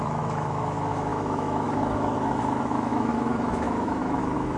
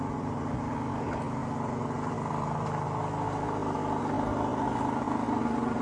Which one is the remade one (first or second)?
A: first